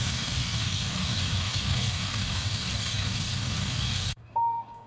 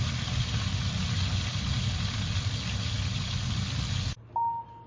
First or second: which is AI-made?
first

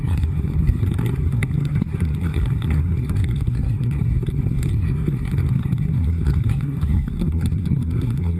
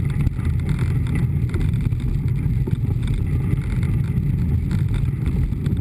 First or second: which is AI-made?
first